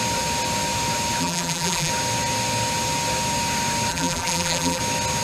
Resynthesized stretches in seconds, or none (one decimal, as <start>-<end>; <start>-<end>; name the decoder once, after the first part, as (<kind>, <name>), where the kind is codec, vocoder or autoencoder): 1.2-1.9 (vocoder, BigVGAN v2); 3.9-4.8